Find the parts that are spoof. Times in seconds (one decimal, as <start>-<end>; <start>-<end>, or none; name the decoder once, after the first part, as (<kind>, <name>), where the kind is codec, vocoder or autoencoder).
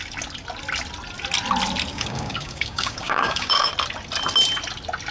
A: 1.9-3.7 (codec, DAC)